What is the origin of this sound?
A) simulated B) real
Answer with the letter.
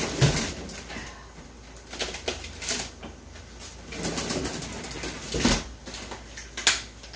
B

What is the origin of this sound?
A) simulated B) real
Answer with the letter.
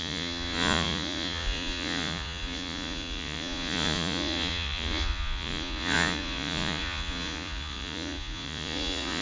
A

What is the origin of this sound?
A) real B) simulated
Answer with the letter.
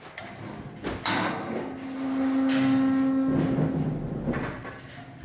A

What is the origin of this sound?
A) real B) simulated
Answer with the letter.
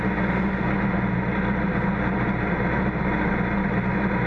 A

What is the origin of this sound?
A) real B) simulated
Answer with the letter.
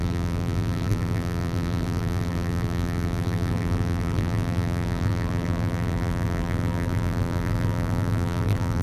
B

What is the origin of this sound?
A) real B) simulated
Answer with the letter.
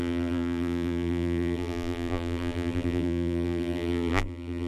B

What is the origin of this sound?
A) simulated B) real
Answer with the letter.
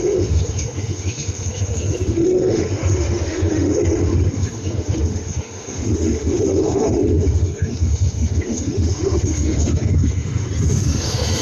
A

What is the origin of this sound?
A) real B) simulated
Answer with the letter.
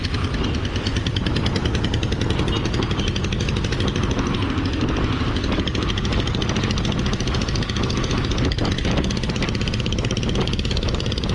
A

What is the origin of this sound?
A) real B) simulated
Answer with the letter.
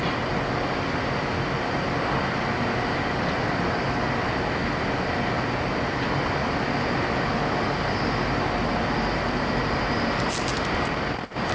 A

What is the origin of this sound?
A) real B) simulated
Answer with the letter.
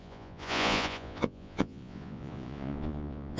B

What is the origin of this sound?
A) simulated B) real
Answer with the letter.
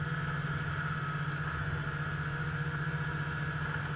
B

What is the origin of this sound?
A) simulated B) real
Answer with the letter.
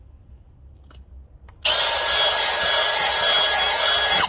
B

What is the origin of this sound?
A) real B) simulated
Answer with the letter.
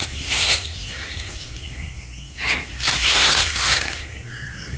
B